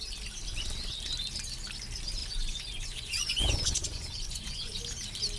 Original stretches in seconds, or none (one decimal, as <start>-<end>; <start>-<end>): 0.0-2.2; 4.8-5.4